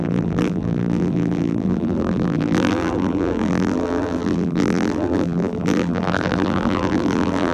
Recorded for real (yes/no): no